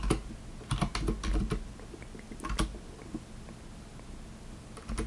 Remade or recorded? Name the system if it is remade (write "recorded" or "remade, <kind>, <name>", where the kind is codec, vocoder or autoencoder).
recorded